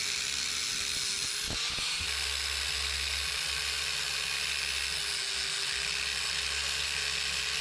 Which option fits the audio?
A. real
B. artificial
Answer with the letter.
A